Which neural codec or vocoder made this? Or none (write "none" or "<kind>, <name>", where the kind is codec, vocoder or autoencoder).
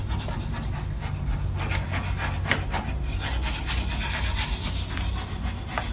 none